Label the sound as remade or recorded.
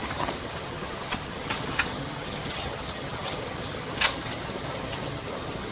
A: remade